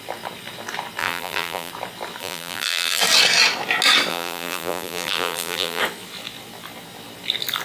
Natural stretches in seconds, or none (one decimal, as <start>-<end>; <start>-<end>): 0.0-1.0; 1.7-2.2; 3.0-4.1; 5.8-7.6